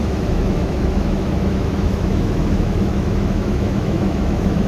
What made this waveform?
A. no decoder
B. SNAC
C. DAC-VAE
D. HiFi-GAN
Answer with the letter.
C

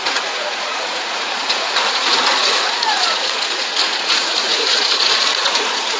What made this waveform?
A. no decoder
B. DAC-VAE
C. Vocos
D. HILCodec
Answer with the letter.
C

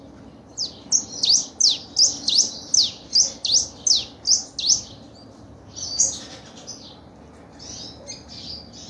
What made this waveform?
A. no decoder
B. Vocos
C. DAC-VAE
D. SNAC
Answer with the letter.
A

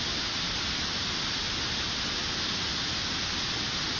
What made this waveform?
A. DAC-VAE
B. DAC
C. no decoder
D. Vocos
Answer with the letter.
C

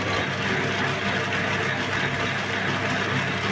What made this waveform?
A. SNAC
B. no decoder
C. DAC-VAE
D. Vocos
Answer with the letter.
B